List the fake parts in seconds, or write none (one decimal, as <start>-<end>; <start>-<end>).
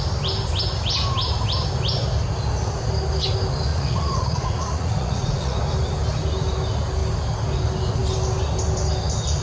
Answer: 3.7-5.6